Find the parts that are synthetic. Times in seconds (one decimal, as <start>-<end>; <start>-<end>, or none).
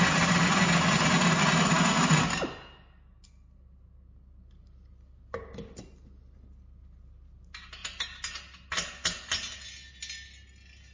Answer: none